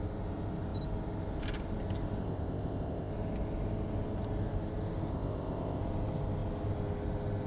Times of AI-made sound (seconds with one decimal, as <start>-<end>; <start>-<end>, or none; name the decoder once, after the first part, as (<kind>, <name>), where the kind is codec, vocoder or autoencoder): 2.2-3.1 (codec, ZipCodec); 5.1-5.8